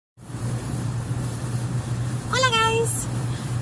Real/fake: fake